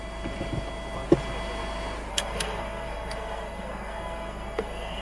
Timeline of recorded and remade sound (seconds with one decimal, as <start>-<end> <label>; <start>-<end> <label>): 0.0-2.1 recorded; 2.1-5.0 remade